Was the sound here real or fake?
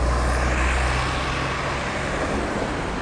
real